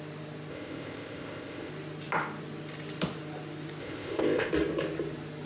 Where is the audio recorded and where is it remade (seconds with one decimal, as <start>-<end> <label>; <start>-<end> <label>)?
0.0-0.5 recorded; 0.5-1.7 remade; 1.7-3.8 recorded; 3.8-4.5 remade; 4.5-5.5 recorded